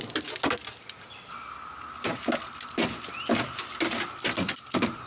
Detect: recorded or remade recorded